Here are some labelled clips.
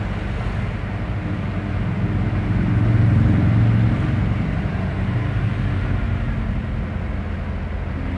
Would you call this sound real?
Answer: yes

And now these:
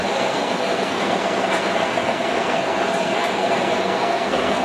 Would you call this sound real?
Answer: no